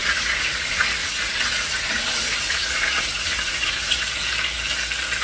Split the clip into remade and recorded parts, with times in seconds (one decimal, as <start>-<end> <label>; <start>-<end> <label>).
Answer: 0.0-4.2 remade; 4.2-5.2 recorded